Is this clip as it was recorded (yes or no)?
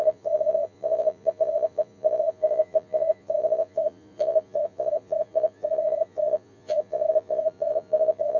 no